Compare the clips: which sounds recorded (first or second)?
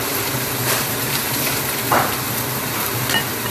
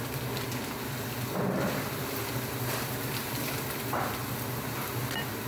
second